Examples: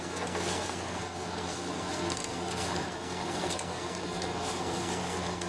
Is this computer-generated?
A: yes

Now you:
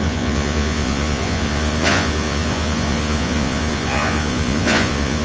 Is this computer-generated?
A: yes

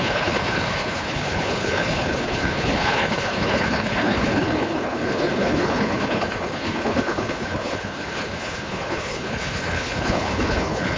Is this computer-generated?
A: yes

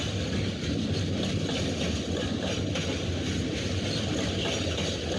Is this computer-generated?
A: no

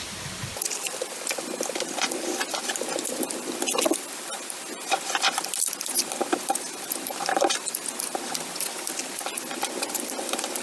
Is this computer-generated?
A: no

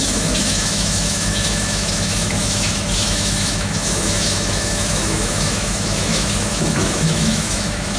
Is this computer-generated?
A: yes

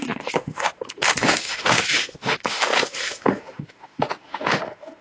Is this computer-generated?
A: yes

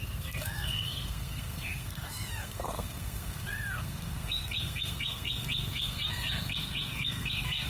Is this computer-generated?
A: yes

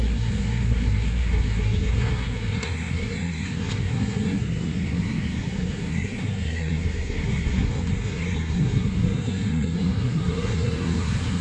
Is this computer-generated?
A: yes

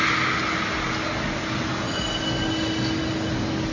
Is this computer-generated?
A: no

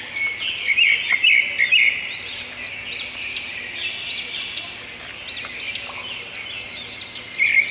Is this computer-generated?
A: no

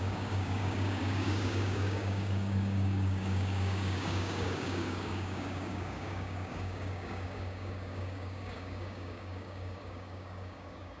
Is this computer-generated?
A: yes